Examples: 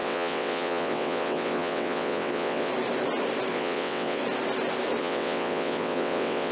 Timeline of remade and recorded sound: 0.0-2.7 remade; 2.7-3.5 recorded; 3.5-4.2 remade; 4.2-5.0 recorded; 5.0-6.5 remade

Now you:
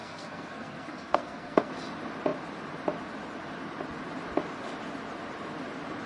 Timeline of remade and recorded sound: 0.0-1.7 remade; 1.7-6.1 recorded

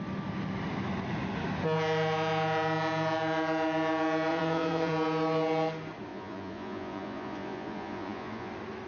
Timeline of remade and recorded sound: 0.0-4.3 recorded; 4.3-4.9 remade; 4.9-6.1 recorded; 6.1-8.5 remade; 8.5-8.9 recorded

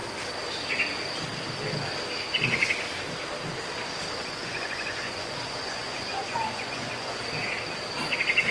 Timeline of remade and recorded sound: 0.0-4.2 recorded; 4.2-7.2 remade; 7.2-8.5 recorded

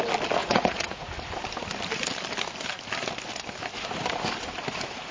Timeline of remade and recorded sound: 0.0-0.4 recorded; 0.4-1.1 remade; 1.1-5.1 recorded

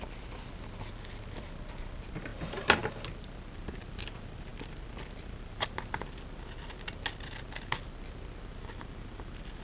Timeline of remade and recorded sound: 0.0-9.6 recorded

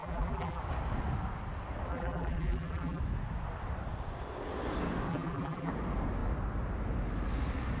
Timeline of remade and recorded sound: 0.0-0.6 remade; 0.6-1.9 recorded; 1.9-3.0 remade; 3.0-5.1 recorded; 5.1-5.7 remade; 5.7-7.8 recorded